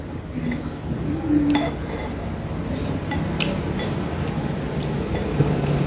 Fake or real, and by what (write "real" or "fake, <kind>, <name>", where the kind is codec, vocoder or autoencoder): real